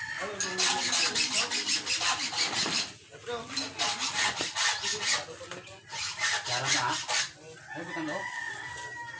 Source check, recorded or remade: recorded